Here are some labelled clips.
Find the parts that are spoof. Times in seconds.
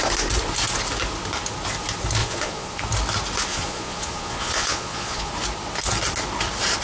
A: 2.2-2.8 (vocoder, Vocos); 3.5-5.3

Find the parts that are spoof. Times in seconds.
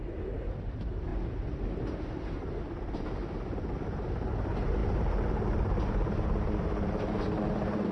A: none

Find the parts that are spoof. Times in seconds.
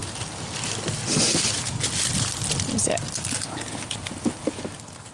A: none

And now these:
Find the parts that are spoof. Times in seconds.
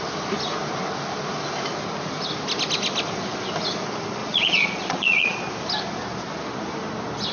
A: 4.2-5.4 (vocoder, Vocos)